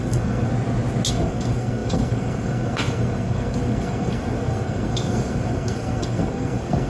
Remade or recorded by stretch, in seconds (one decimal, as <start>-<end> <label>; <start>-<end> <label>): 0.0-0.5 remade; 0.5-1.1 recorded; 1.1-6.9 remade